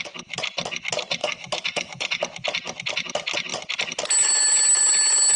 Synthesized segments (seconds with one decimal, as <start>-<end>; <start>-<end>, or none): 1.2-2.2